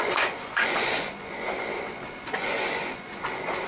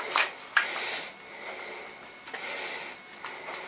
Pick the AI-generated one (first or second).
first